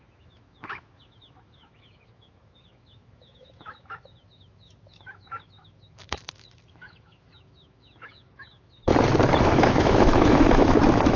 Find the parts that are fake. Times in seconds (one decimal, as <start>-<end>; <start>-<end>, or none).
0.0-8.9; 9.4-11.2